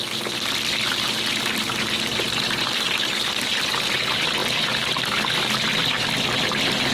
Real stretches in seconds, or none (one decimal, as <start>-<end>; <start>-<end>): 0.0-6.9